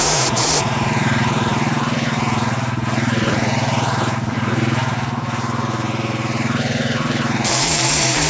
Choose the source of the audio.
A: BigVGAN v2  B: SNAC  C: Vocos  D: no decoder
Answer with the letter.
A